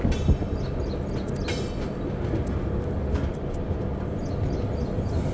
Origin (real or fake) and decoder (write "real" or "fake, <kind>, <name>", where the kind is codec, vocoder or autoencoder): real